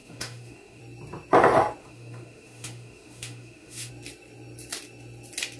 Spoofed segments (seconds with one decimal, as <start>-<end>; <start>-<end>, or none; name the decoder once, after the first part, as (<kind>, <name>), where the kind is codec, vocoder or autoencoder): 0.0-0.8 (autoencoder, DAC-VAE); 1.8-3.9